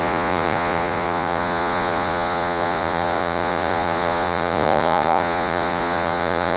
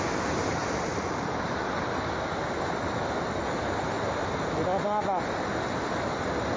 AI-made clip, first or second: first